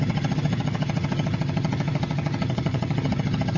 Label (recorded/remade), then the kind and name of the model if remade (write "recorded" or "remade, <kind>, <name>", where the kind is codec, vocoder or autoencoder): remade, vocoder, HiFi-GAN